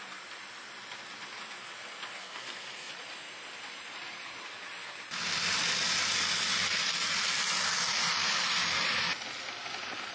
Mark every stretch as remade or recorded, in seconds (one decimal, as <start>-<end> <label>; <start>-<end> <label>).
0.0-2.2 recorded; 2.2-2.9 remade; 2.9-10.1 recorded